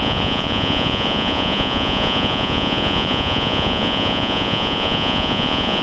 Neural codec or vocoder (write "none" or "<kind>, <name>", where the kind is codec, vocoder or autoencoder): vocoder, Vocos